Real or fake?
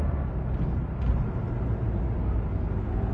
real